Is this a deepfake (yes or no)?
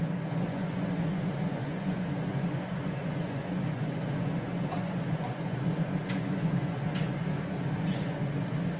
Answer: yes